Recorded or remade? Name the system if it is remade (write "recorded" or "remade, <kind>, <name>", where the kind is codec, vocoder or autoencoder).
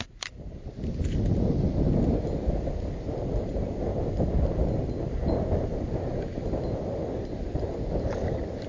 recorded